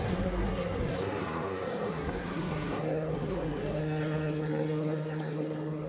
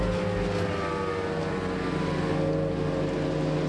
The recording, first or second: second